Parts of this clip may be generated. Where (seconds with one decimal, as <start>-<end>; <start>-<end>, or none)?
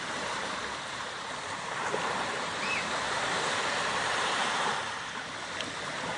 0.0-0.6; 1.4-4.7